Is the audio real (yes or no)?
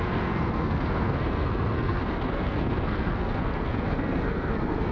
no